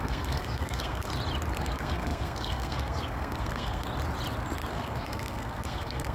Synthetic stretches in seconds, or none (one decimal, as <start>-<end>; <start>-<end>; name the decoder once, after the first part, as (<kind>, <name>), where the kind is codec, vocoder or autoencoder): 0.0-1.1 (codec, SNAC); 1.6-3.9; 4.7-6.1